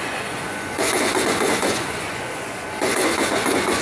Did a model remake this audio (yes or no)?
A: yes